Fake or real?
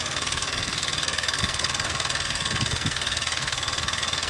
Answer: fake